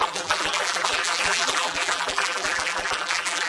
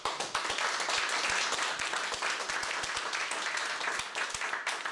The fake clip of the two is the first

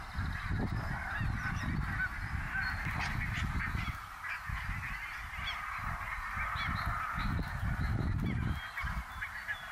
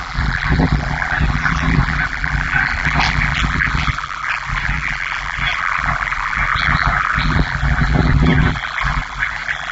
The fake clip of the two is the second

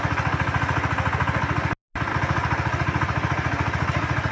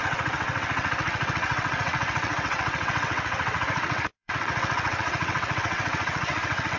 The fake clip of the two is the second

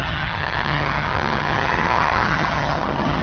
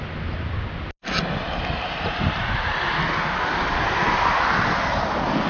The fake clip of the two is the first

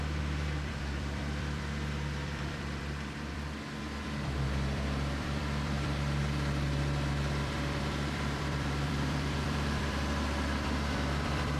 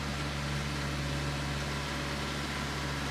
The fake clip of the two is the first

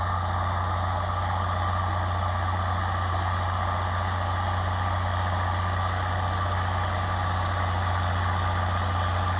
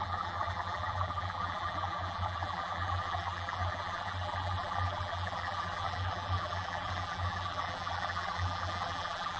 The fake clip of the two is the second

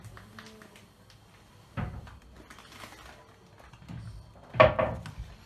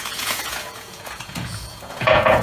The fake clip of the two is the second